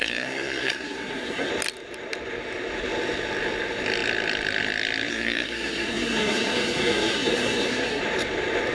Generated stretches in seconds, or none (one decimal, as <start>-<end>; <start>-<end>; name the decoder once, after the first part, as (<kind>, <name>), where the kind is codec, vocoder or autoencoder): 0.0-1.5 (codec, SNAC); 5.1-8.0